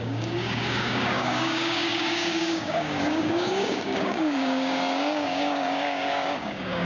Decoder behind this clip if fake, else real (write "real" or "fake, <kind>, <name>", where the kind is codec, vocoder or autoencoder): fake, codec, DAC